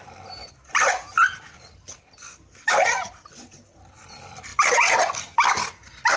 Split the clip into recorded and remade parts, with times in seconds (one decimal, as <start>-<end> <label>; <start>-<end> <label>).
0.0-6.2 recorded